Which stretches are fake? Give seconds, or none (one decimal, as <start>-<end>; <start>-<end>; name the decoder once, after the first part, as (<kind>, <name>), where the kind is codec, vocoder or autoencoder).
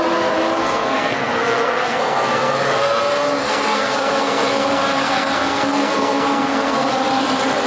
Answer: 0.6-3.0 (codec, SNAC); 3.4-6.9